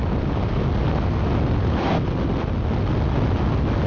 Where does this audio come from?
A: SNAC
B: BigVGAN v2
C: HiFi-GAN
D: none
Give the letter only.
D